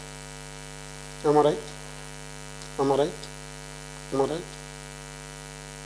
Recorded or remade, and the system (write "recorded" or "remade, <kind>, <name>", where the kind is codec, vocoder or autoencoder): recorded